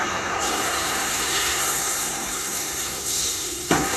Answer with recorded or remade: remade